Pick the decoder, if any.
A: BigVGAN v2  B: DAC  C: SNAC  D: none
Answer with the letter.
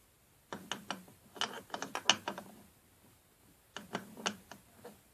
D